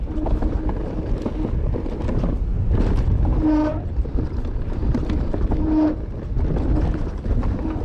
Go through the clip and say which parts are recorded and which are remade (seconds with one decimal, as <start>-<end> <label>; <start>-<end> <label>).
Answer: 0.0-7.8 recorded